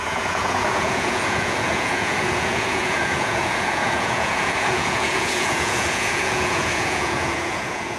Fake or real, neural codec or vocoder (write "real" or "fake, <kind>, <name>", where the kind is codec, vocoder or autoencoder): fake, vocoder, Vocos